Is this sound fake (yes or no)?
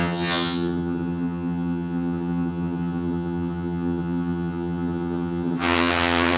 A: yes